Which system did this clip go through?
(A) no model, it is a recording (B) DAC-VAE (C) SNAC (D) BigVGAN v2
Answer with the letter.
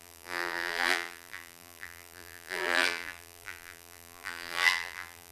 D